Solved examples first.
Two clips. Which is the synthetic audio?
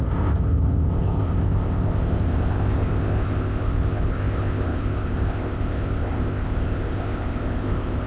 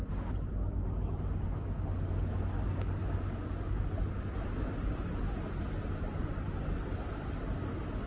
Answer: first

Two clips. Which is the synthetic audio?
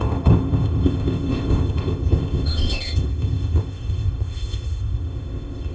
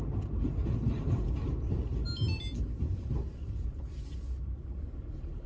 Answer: first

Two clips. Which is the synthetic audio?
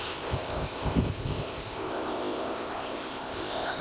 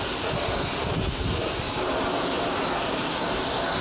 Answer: first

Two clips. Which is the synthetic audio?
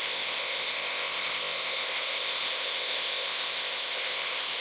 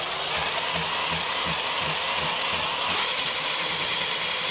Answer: first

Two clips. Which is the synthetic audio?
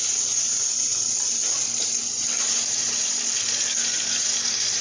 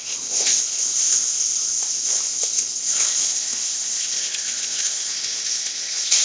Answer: second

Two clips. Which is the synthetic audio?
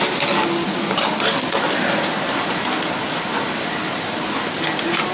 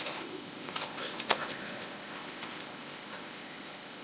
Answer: second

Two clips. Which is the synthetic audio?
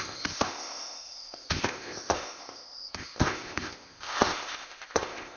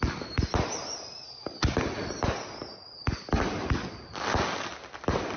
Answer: first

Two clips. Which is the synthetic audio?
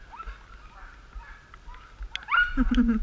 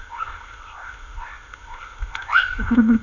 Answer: second